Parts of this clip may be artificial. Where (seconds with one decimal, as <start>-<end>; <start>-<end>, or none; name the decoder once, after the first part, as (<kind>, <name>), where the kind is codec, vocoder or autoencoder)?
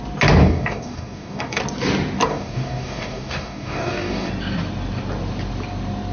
0.4-1.6 (codec, DAC); 2.3-4.3